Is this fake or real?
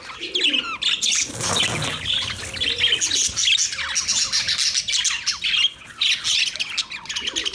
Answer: real